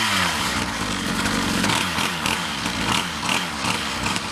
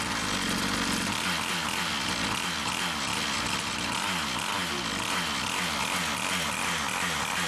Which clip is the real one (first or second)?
second